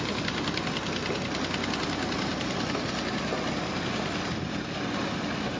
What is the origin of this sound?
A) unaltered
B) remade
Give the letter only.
A